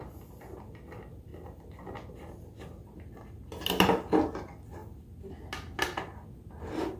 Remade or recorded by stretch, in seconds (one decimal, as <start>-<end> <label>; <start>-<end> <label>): 0.0-7.0 recorded